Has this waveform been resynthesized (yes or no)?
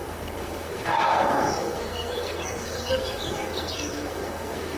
yes